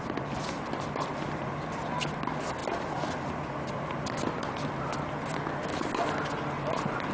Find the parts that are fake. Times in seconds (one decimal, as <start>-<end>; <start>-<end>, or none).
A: none